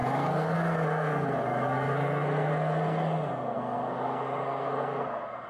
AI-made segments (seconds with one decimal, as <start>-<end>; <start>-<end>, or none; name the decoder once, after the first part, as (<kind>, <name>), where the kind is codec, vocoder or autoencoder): 0.0-5.5 (codec, SNAC)

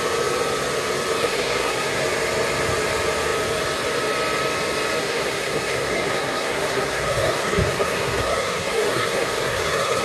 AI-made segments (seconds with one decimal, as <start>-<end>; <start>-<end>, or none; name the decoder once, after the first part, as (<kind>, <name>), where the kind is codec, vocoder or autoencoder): 1.2-2.0 (codec, SNAC); 5.0-10.0

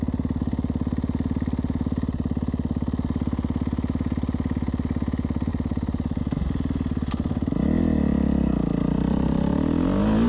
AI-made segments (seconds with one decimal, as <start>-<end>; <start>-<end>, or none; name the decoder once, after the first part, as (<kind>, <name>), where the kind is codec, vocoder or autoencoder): 5.5-6.2 (vocoder, BigVGAN v2)